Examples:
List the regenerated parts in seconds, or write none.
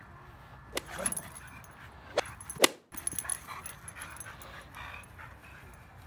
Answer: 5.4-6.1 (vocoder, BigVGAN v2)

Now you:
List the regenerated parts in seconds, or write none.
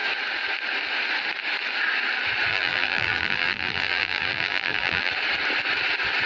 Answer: 2.5-5.1 (vocoder, BigVGAN v2)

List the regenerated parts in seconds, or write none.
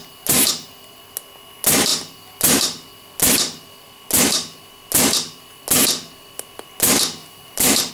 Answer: 7.2-7.9 (vocoder, BigVGAN v2)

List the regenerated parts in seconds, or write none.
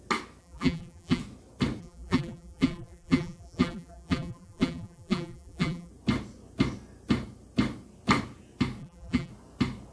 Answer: 0.4-1.2 (vocoder, BigVGAN v2); 1.8-5.9; 8.8-9.3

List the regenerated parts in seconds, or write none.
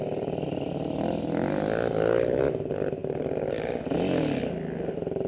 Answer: none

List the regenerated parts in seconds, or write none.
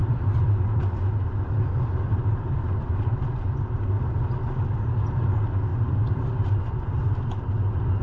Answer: 0.0-0.6 (vocoder, BigVGAN v2); 2.1-3.5; 5.7-6.7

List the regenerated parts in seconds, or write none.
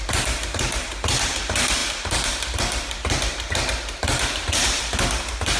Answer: 0.0-5.6 (vocoder, BigVGAN v2)